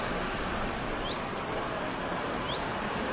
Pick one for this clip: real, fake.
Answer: fake